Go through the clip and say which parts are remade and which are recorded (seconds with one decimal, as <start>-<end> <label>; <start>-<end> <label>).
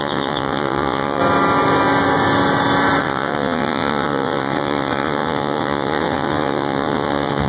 0.0-1.2 remade; 1.2-3.0 recorded; 3.0-7.5 remade